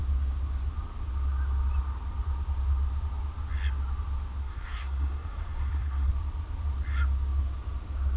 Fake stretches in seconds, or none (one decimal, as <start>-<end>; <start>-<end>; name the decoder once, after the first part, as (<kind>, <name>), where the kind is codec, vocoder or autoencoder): 4.4-6.1 (codec, SNAC)